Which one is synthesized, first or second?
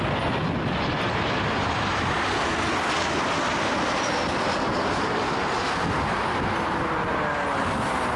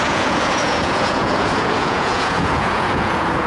second